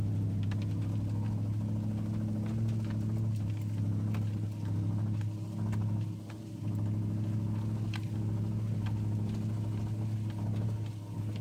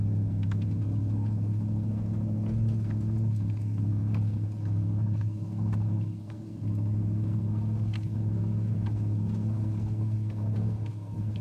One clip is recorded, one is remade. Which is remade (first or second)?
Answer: second